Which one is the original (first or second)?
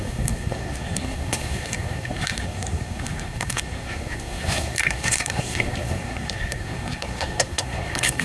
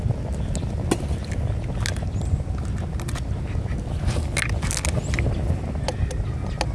second